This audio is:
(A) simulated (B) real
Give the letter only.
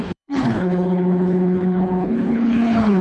A